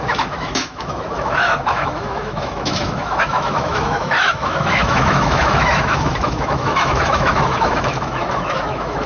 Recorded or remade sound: remade